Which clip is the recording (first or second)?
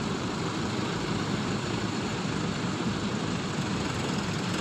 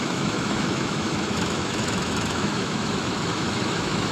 first